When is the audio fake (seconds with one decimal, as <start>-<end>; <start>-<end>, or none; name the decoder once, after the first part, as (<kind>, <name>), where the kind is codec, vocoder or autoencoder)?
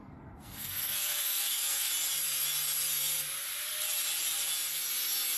0.0-1.9 (codec, SNAC)